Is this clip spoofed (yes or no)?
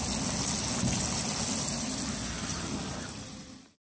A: no